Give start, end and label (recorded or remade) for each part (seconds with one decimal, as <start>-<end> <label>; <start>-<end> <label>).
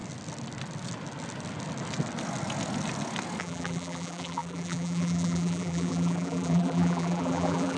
0.0-3.4 recorded; 3.4-7.8 remade